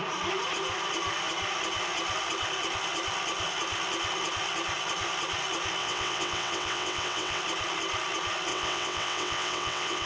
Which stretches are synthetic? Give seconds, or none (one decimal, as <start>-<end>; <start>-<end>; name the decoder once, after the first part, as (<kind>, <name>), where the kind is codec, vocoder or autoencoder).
5.8-7.4 (vocoder, WaveNeXt); 8.5-10.1